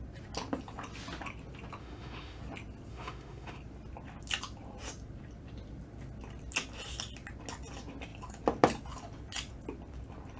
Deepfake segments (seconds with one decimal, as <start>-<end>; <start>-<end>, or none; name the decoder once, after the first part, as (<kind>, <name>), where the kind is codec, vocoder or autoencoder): 1.8-2.4 (autoencoder, DAC-VAE); 2.9-3.6